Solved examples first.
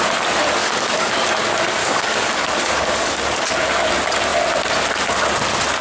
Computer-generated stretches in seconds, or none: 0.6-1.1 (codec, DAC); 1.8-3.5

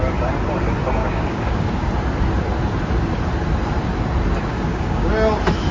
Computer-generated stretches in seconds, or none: 1.0-1.9 (codec, DAC); 4.5-5.1

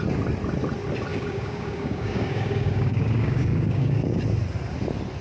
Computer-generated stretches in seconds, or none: 1.1-4.2 (codec, DAC)

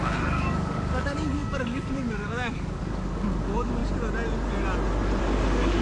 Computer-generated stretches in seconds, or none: 0.0-3.8 (codec, DAC); 5.2-5.8

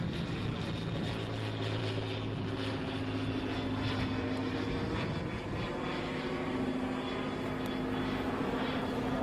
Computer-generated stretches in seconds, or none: none

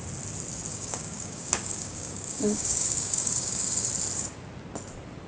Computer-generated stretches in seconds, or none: 0.7-3.9 (codec, DAC)

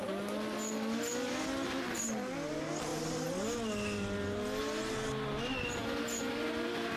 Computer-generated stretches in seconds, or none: none